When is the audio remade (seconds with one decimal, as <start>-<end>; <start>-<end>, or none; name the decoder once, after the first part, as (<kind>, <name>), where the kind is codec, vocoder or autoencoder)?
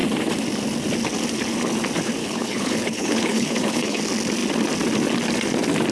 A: 2.2-4.0 (codec, HILCodec)